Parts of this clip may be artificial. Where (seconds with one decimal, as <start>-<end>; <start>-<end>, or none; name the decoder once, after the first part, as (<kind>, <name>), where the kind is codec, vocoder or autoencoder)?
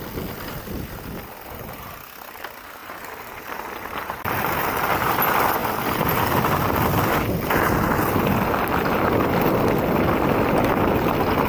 2.8-5.1 (vocoder, BigVGAN v2)